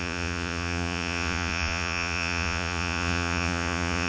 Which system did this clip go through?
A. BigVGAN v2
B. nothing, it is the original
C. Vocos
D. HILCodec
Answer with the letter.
C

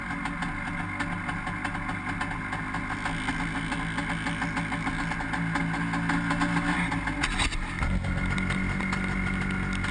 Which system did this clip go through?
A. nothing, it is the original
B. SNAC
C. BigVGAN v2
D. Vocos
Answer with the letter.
A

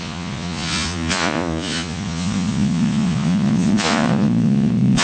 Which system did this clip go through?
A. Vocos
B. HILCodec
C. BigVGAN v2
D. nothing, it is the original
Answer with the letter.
A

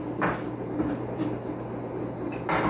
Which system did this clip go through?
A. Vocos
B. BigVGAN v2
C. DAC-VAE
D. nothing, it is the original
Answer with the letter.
D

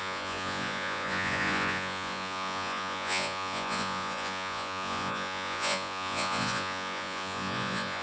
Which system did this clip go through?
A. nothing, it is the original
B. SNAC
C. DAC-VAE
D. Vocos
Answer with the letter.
D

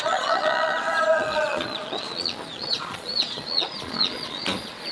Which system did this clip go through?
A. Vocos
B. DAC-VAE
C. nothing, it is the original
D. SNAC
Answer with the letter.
A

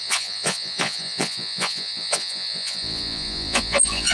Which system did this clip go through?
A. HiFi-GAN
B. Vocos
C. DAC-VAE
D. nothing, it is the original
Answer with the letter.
B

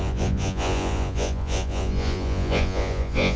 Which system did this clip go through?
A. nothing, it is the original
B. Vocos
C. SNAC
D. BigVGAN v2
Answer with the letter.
B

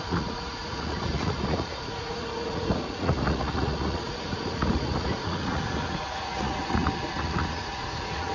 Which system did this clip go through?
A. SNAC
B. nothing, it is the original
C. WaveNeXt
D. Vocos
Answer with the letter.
D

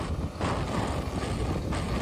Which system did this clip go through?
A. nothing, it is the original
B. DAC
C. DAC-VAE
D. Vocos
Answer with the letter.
A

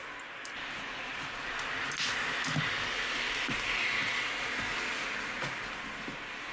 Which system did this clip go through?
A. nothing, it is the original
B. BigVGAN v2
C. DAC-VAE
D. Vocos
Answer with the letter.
A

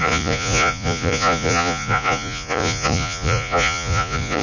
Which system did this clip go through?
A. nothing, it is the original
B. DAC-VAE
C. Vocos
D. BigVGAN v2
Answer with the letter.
C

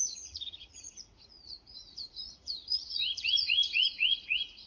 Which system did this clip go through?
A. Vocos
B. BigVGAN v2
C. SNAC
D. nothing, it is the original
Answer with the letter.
A